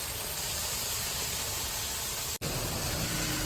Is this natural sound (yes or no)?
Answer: yes